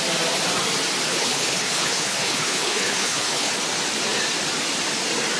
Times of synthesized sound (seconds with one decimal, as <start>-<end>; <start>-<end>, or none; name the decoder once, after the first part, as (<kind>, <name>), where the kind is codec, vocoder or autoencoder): 1.1-3.5 (codec, HILCodec)